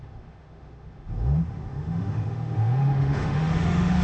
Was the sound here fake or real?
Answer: fake